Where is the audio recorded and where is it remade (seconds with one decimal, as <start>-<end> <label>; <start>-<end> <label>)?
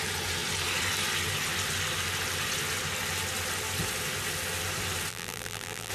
0.0-5.1 recorded; 5.1-5.9 remade